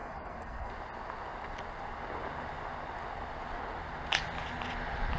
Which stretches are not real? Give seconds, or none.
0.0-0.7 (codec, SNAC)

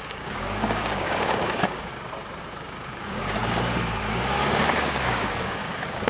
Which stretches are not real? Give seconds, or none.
0.0-1.9 (codec, DAC); 2.4-3.4; 4.0-6.1

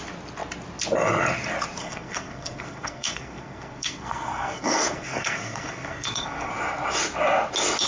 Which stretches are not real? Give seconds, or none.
1.8-6.5 (codec, SNAC)

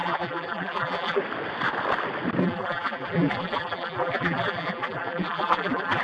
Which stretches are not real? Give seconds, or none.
0.0-1.2 (vocoder, BigVGAN v2); 2.4-6.0